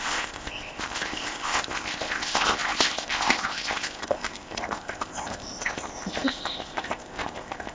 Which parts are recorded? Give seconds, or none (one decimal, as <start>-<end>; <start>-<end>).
none